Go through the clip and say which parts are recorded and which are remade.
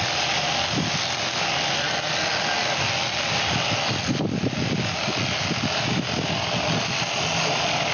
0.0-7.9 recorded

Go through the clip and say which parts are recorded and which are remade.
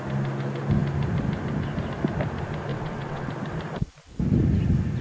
0.0-2.7 recorded; 2.7-3.3 remade; 3.3-5.0 recorded